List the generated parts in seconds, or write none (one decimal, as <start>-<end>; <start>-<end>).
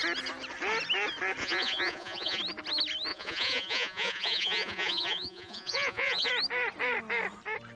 1.4-2.4; 3.1-6.3